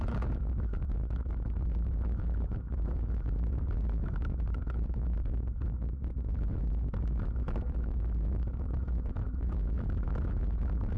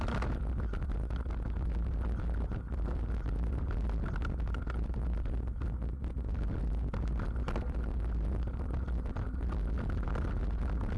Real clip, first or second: second